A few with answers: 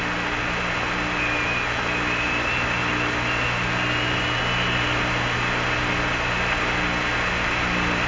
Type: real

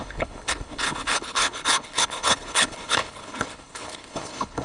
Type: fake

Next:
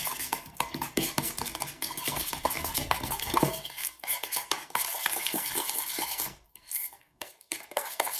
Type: fake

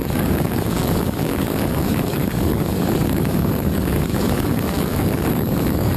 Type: fake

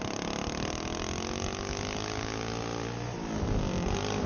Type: real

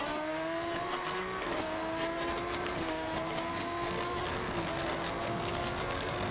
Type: fake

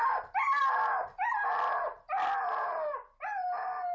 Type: real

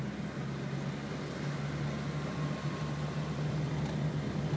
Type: real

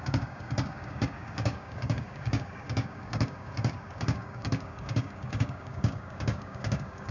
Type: fake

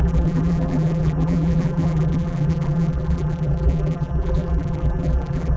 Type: fake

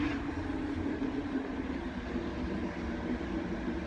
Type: real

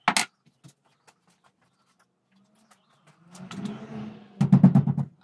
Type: real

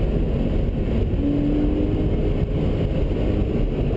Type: real